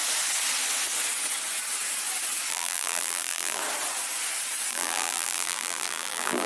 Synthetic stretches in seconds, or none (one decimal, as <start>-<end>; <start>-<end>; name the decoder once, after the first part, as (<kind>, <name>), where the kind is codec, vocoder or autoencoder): 2.5-3.6 (vocoder, BigVGAN v2); 4.7-6.5

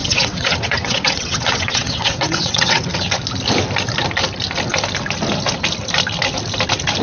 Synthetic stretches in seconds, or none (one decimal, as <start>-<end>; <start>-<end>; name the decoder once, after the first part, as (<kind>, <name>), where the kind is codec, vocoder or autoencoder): 0.0-2.9 (vocoder, WaveNeXt)

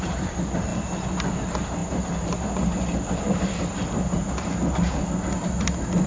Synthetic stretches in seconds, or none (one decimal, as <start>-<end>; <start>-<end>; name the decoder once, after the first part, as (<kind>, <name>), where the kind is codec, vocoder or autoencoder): none

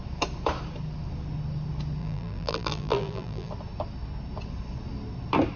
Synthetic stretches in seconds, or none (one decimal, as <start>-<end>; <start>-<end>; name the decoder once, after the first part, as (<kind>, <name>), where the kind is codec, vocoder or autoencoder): 2.0-3.5 (vocoder, BigVGAN v2)

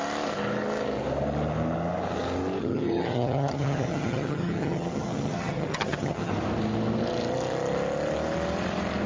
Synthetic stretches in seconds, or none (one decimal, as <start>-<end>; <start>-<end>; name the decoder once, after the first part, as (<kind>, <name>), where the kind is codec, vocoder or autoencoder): 2.6-6.3 (vocoder, HiFi-GAN)

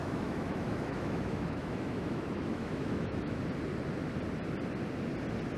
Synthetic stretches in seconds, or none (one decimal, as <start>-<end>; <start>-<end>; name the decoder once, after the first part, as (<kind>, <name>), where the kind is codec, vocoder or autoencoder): 0.0-3.4 (autoencoder, DAC-VAE)